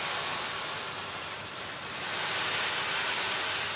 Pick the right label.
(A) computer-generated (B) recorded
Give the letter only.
B